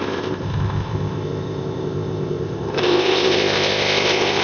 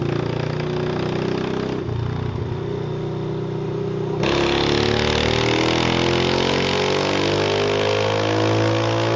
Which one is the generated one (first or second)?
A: first